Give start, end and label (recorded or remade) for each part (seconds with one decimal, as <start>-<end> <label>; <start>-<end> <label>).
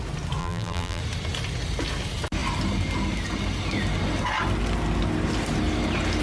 0.0-0.4 recorded; 0.4-1.0 remade; 1.0-6.2 recorded